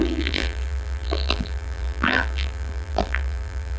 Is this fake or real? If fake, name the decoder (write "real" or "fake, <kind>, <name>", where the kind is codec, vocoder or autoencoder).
fake, vocoder, BigVGAN v2